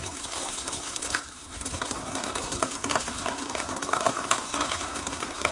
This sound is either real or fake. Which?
fake